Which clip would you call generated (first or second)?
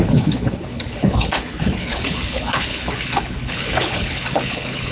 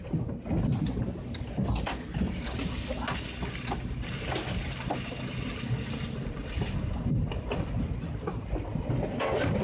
first